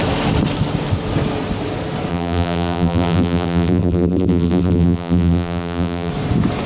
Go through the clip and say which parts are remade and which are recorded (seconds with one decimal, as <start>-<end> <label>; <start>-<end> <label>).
0.0-2.1 recorded; 2.1-6.1 remade; 6.1-6.7 recorded